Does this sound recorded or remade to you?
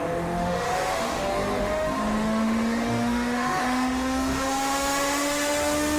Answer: remade